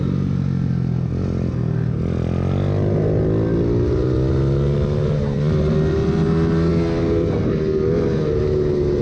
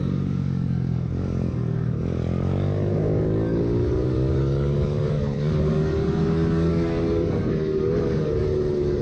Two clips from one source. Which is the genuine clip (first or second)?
first